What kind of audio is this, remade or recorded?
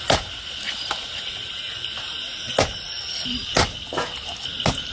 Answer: recorded